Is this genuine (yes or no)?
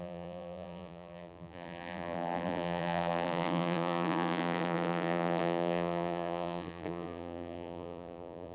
no